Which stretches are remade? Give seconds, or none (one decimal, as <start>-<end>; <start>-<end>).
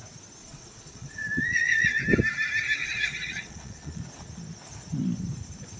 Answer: 0.4-2.0; 2.8-4.0